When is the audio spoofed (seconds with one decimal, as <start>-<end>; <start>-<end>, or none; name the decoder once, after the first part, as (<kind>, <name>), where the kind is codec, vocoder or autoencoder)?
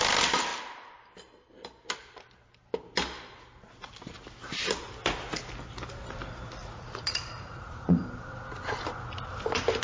6.6-8.0 (vocoder, Vocos)